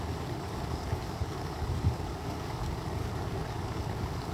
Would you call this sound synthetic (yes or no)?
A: yes